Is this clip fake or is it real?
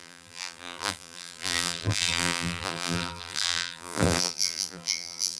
fake